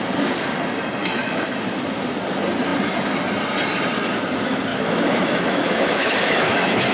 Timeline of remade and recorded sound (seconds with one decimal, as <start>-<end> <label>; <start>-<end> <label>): 0.0-1.0 recorded; 1.0-1.6 remade; 1.6-4.7 recorded; 4.7-6.9 remade